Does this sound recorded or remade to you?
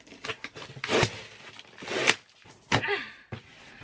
recorded